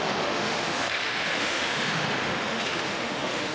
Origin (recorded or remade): remade